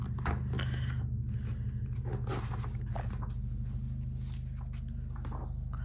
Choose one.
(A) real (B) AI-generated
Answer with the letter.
A